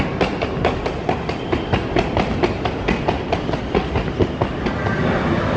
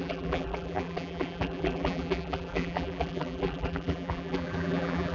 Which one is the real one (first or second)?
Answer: first